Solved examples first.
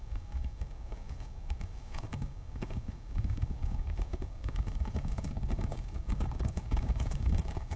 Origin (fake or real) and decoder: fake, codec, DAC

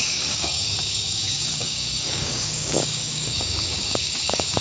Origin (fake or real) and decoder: fake, codec, DAC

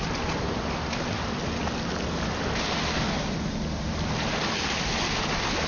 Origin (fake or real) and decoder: real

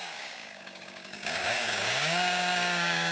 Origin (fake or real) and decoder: fake, codec, DAC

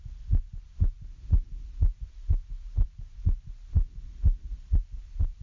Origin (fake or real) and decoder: real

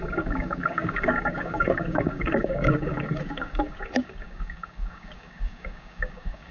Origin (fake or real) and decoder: fake, codec, DAC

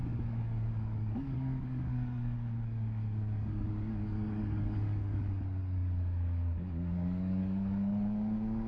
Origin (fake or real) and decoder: fake, codec, DAC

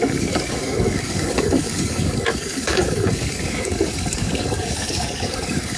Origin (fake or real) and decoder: fake, codec, DAC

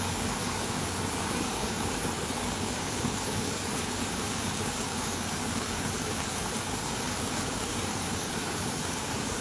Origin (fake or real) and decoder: fake, codec, DAC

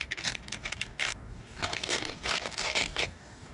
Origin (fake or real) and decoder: fake, codec, DAC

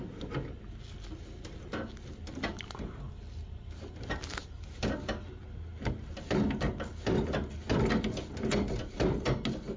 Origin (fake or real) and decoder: real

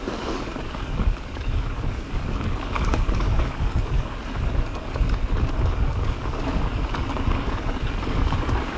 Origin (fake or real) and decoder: fake, codec, DAC